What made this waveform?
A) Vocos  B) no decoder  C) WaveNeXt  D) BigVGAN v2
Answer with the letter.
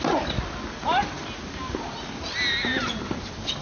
B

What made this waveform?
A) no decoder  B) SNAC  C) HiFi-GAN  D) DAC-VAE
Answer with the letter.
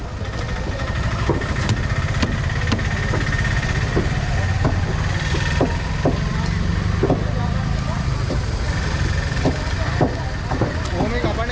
A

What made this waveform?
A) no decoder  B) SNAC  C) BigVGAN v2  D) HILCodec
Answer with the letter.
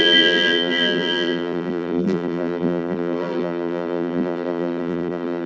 C